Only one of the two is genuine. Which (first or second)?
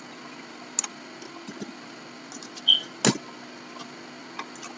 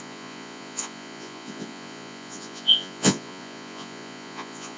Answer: first